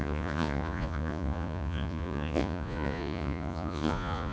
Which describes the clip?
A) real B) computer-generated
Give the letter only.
B